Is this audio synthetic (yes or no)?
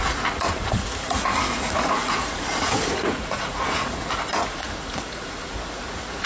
yes